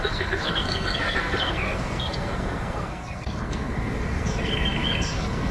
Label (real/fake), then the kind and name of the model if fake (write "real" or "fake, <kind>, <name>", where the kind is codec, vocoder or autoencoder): fake, codec, SNAC